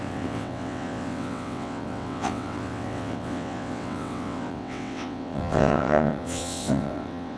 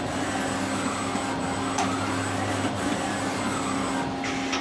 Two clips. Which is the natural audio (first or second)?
second